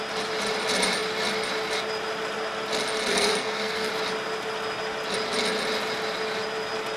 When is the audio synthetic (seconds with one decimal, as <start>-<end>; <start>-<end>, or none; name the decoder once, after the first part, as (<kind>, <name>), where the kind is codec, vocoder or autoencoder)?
3.1-3.9 (codec, SNAC)